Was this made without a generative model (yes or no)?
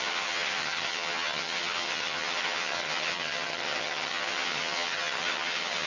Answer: no